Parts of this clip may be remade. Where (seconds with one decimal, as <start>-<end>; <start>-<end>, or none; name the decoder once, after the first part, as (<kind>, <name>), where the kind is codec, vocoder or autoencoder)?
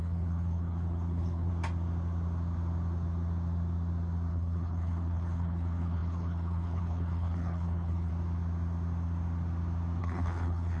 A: 0.0-1.5 (codec, HILCodec); 4.3-8.1; 10.0-10.8